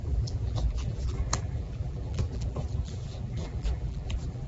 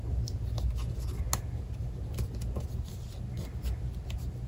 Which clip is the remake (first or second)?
first